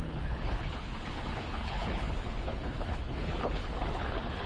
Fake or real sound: fake